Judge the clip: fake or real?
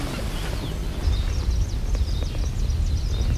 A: real